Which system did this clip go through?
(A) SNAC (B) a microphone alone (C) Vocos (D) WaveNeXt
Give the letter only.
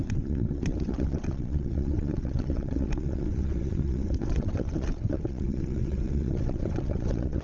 D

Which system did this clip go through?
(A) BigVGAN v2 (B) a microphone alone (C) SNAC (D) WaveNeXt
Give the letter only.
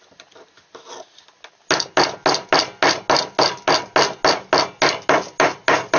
B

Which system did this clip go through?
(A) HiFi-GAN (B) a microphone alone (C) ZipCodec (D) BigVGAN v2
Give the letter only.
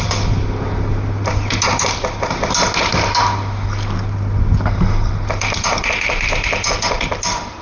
B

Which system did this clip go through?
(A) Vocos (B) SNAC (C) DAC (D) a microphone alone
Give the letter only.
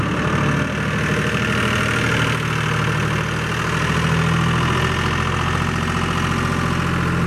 D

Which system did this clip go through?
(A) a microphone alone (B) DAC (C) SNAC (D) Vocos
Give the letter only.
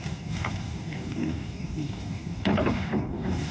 B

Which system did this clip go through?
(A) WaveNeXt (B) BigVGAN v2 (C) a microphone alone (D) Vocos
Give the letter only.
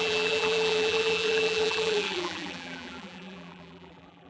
B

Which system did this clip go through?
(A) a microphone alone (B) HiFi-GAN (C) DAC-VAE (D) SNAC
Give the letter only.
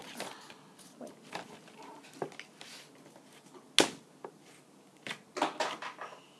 A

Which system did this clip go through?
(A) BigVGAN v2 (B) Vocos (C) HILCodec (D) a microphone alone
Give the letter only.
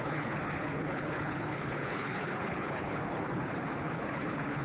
C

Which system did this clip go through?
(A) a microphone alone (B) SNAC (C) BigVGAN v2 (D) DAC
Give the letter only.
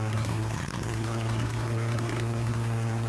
B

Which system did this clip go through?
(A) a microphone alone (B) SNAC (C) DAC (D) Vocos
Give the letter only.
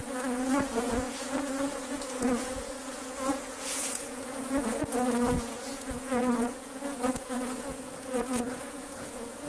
D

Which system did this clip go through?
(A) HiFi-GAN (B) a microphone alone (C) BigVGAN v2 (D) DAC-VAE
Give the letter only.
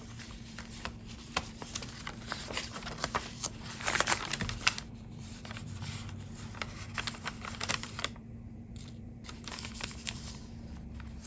C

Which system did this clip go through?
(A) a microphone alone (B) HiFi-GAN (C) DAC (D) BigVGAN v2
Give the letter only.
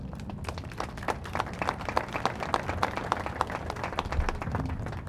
A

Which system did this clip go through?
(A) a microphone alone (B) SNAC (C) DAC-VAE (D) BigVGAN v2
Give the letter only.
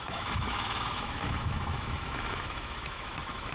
C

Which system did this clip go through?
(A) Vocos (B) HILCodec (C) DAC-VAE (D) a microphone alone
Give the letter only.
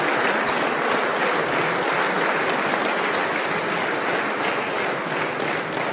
D